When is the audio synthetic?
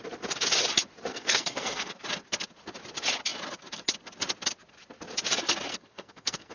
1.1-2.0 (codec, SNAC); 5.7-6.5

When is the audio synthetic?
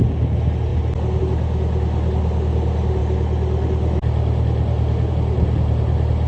none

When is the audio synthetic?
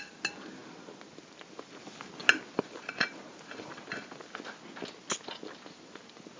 none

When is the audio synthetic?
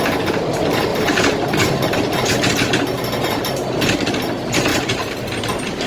0.9-3.9 (vocoder, BigVGAN v2); 4.7-5.3